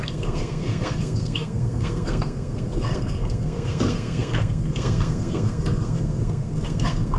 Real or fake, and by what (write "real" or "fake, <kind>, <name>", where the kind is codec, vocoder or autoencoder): fake, codec, SNAC